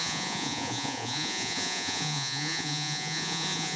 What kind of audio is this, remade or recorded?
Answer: remade